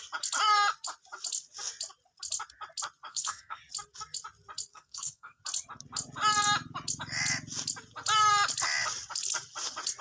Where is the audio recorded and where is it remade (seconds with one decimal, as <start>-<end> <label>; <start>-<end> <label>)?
0.0-3.1 recorded; 3.1-3.6 remade; 3.6-4.7 recorded; 4.7-5.4 remade; 5.4-10.0 recorded

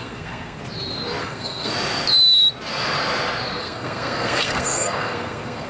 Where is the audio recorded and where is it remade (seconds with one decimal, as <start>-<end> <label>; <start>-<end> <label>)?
0.0-0.6 remade; 0.6-1.2 recorded; 1.2-1.7 remade; 1.7-3.6 recorded; 3.6-5.7 remade

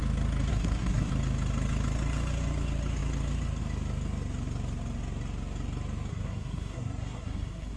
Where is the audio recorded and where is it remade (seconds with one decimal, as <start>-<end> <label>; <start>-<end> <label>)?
0.0-0.5 recorded; 0.5-1.1 remade; 1.1-6.1 recorded; 6.1-7.8 remade

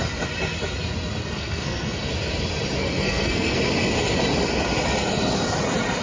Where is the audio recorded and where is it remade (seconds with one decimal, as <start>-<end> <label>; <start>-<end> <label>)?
0.0-1.2 recorded; 1.2-2.1 remade; 2.1-2.8 recorded; 2.8-3.6 remade; 3.6-6.0 recorded

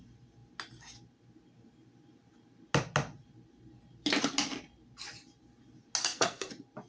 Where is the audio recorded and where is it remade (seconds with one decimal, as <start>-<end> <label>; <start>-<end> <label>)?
0.0-6.0 recorded; 6.0-6.5 remade; 6.5-6.9 recorded

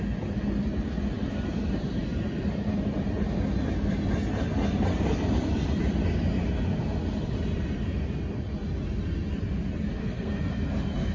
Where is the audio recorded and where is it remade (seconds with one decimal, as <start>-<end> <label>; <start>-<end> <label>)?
0.0-10.0 recorded; 10.0-10.5 remade; 10.5-11.1 recorded